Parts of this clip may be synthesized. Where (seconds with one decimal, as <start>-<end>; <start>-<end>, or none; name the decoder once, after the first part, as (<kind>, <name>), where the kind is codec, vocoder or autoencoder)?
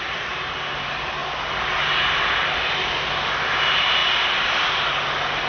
none